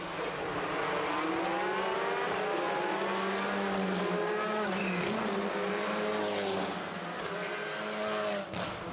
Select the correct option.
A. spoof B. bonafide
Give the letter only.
B